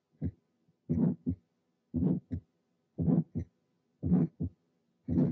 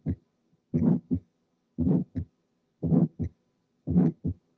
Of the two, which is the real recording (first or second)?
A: first